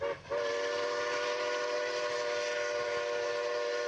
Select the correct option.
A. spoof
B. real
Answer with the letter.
B